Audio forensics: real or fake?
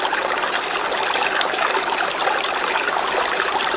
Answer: real